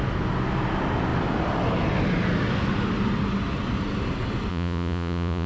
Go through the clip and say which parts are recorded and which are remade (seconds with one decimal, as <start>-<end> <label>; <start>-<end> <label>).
0.0-4.5 recorded; 4.5-5.5 remade